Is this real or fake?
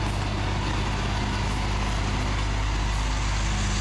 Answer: real